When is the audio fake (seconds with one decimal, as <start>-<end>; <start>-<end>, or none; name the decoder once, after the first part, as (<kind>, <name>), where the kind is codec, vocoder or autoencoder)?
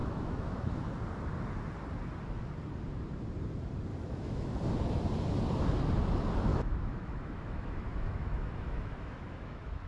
0.0-0.8 (autoencoder, DAC-VAE); 3.9-4.5; 6.5-9.9